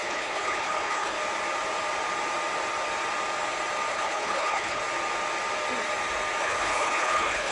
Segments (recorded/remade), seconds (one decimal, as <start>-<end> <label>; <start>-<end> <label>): 0.0-1.2 remade; 1.2-3.9 recorded; 3.9-4.8 remade; 4.8-6.4 recorded; 6.4-7.5 remade